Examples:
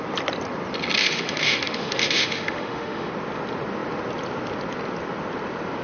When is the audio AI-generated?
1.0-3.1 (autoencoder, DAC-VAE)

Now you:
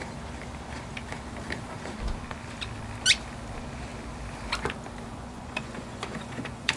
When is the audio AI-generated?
5.1-6.8 (vocoder, Vocos)

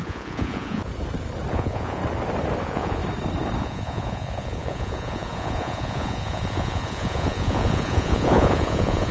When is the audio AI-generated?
0.0-0.9 (vocoder, Vocos); 1.5-2.0; 2.6-3.0; 3.6-9.1